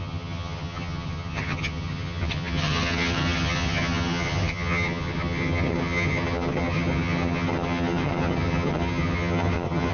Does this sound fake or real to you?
fake